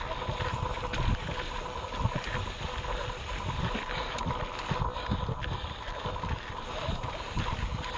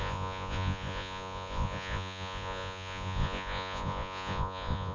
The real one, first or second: first